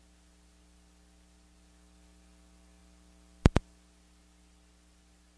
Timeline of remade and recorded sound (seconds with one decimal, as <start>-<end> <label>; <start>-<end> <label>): 0.0-5.4 recorded